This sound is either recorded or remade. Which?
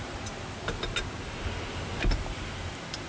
recorded